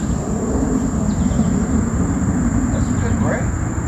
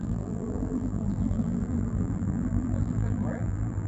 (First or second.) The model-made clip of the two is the second